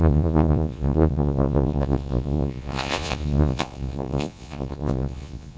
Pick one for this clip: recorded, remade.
remade